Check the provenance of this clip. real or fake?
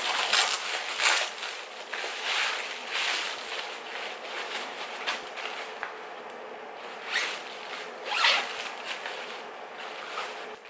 real